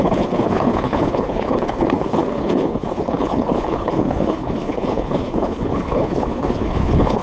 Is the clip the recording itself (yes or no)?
no